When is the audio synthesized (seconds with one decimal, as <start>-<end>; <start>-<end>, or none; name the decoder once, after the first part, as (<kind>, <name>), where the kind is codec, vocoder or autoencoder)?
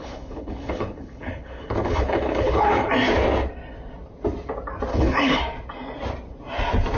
0.0-2.9 (codec, HILCodec); 4.9-5.4